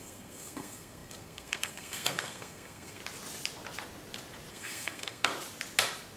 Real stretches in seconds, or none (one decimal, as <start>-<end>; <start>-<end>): 3.0-4.5; 5.3-6.2